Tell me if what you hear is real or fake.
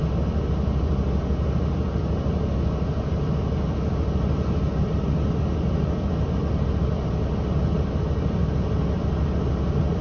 real